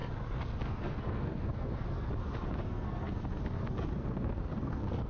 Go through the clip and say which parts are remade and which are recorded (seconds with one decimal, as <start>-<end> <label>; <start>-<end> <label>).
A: 0.0-2.1 remade; 2.1-2.6 recorded; 2.6-5.1 remade